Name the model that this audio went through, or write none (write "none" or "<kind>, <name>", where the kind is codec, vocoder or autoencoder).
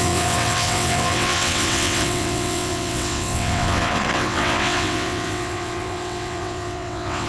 vocoder, WaveNeXt